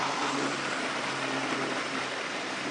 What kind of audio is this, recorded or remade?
recorded